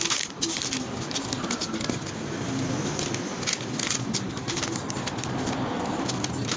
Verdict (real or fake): real